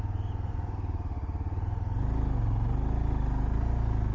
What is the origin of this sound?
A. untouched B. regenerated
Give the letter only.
A